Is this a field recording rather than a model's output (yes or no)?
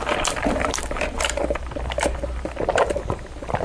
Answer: no